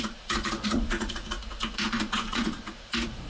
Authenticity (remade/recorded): remade